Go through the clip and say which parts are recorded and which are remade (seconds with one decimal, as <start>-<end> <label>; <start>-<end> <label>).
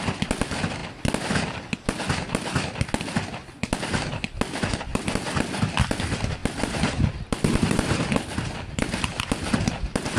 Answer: 0.0-0.8 remade; 0.8-4.8 recorded; 4.8-10.2 remade